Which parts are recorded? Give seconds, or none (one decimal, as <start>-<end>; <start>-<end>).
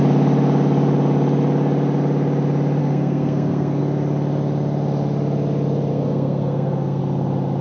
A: 0.0-2.8; 3.8-5.9; 7.0-7.6